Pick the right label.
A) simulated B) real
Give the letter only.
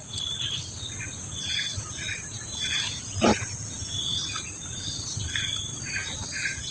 B